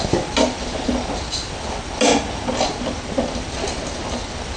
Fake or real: real